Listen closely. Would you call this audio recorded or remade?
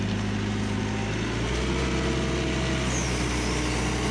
recorded